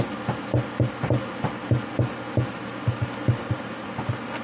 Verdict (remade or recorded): recorded